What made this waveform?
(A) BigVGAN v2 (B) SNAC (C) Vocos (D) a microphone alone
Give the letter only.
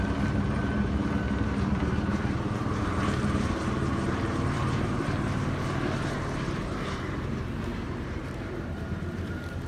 A